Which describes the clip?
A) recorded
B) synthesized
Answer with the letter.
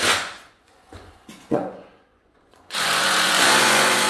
B